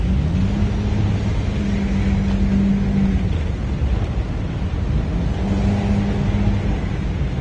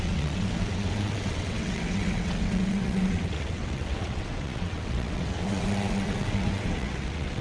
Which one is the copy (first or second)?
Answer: second